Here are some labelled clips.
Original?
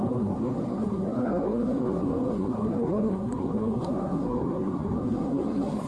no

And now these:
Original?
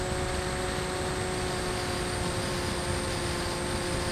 yes